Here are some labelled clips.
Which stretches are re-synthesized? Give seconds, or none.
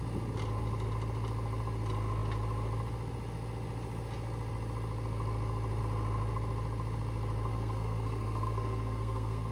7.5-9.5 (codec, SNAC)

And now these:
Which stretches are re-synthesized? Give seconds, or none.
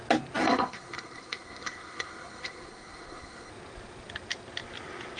0.4-3.5 (codec, SNAC)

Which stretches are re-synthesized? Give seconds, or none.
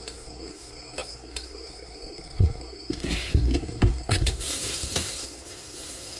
0.0-6.2 (codec, SNAC)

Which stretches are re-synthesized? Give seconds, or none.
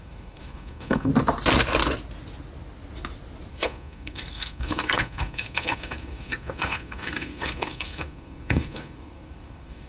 0.0-1.1 (codec, SNAC); 3.5-9.9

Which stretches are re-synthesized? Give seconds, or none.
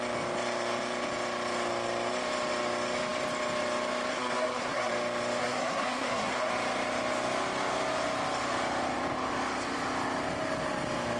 4.1-4.9 (codec, SNAC); 5.4-6.5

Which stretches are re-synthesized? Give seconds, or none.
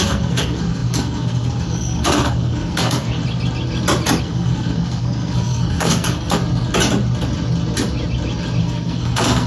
0.0-3.2 (codec, SNAC); 4.2-6.4; 8.6-9.5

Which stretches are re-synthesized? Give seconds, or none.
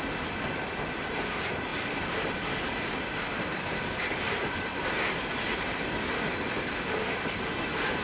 none